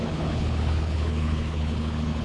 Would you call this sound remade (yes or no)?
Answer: yes